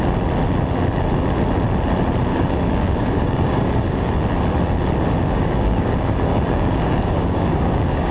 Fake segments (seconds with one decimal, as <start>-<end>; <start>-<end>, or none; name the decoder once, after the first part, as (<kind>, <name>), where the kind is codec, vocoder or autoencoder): 2.3-4.1 (codec, DAC); 5.2-8.1